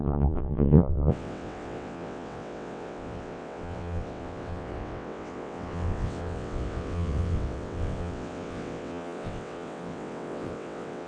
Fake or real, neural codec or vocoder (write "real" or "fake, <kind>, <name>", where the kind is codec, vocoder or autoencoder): fake, vocoder, WaveNeXt